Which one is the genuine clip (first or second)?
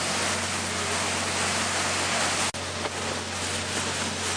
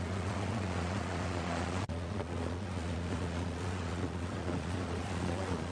first